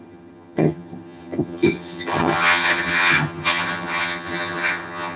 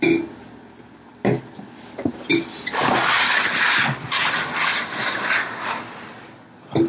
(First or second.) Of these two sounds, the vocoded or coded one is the first